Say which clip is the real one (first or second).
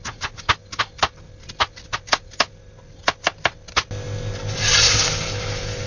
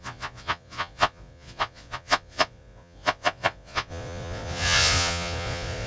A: first